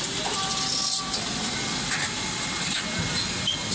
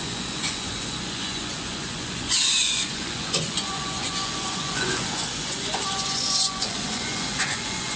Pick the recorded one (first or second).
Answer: first